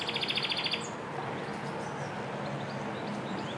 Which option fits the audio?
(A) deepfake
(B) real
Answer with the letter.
B